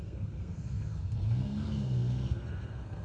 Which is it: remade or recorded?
remade